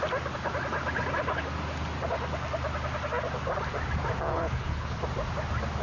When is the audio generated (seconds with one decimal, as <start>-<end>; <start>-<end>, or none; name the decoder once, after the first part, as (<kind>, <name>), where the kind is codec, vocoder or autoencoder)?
4.3-5.0 (codec, HILCodec)